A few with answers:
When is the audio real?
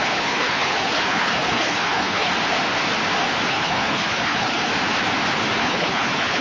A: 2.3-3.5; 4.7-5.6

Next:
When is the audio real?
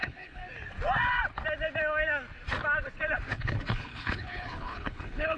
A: 0.4-3.3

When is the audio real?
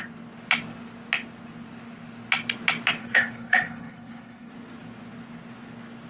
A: 0.0-3.0; 4.5-6.1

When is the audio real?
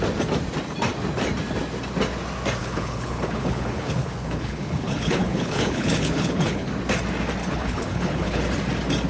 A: 0.0-2.6; 6.7-7.4; 8.4-9.1